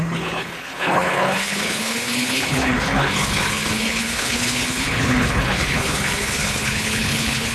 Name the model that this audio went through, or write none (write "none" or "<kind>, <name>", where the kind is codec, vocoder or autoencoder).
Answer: codec, HILCodec